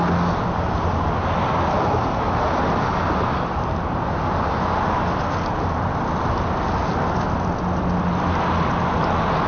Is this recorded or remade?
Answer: recorded